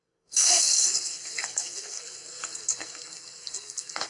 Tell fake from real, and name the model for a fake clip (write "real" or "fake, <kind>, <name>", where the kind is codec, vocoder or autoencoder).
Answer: fake, codec, SNAC